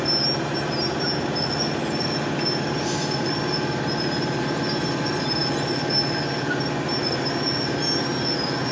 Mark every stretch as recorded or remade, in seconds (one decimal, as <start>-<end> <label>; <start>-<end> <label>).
0.0-8.7 recorded